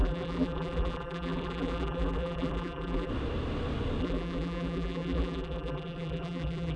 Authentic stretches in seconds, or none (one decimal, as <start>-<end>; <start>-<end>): 3.1-4.0